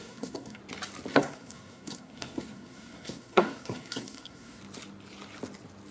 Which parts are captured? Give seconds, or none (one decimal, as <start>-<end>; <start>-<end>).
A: 0.6-1.1; 4.6-5.9